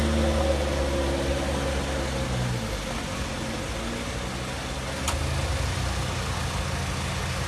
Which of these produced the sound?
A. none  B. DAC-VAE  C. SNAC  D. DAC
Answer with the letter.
A